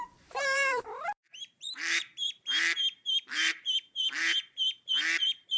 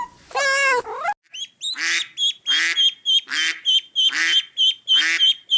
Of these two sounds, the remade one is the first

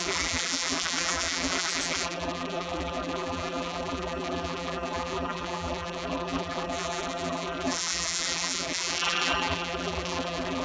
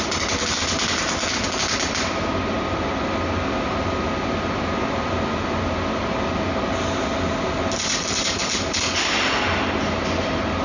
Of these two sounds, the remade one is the first